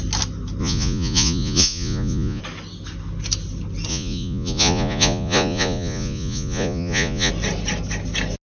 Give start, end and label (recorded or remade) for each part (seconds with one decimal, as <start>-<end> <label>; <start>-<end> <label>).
0.0-0.6 recorded; 0.6-2.4 remade; 2.4-3.9 recorded; 3.9-7.3 remade; 7.3-8.4 recorded